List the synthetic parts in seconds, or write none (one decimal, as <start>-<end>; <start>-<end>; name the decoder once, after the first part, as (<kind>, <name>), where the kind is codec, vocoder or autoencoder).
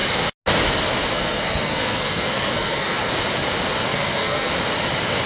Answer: 1.1-3.1 (codec, SNAC); 3.9-4.5